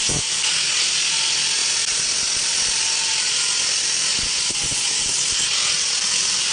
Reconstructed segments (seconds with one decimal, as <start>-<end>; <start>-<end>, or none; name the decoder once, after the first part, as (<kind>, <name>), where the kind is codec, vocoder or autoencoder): 4.1-4.9 (vocoder, Vocos)